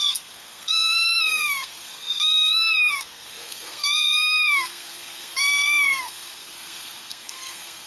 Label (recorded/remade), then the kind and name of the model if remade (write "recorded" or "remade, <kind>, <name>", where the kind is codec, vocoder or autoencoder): remade, codec, SNAC